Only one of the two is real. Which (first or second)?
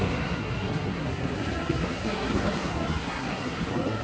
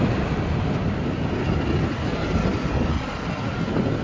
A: second